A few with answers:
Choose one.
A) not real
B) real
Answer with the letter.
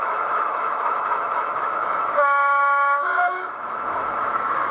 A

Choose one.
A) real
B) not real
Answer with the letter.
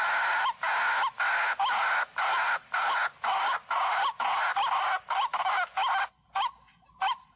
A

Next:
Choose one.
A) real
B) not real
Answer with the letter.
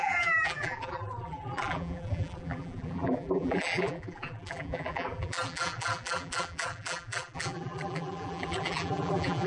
B